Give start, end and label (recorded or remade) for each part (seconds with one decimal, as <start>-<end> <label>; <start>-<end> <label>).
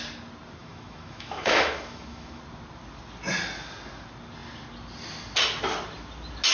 0.0-0.6 recorded; 0.6-2.4 remade; 2.4-6.5 recorded